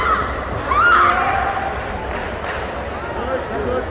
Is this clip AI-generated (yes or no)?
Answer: no